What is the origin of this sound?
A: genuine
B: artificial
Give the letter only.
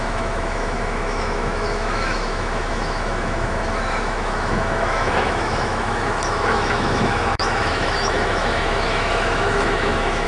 B